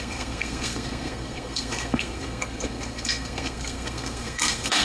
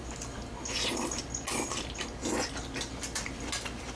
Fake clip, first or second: first